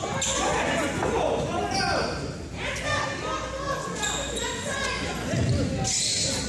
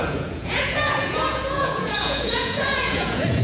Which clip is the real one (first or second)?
first